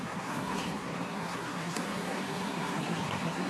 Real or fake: fake